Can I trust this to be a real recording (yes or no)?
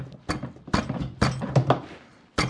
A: yes